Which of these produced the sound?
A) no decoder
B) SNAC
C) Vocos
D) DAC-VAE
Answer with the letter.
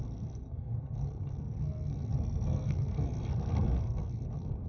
B